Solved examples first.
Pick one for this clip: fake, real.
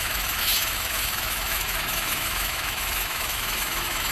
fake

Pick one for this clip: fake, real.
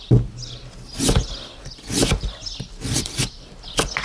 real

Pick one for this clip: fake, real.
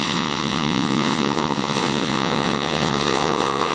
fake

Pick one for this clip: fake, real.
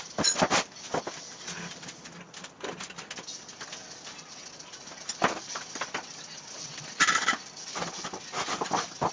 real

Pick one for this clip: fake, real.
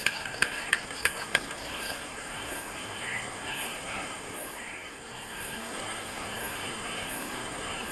fake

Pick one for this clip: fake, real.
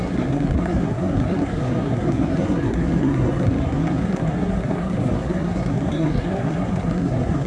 fake